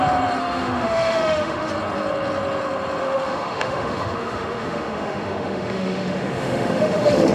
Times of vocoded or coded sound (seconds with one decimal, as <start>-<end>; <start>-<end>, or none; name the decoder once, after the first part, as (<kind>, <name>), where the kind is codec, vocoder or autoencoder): 0.4-1.7 (autoencoder, DAC-VAE); 3.0-7.3